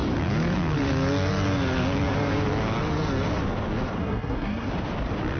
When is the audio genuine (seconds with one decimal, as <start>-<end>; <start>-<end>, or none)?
0.0-4.0; 4.7-5.4